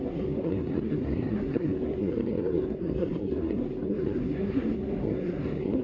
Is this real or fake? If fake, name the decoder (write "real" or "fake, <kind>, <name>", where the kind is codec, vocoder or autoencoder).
fake, codec, SNAC